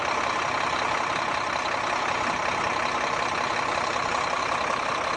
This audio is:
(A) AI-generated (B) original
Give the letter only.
B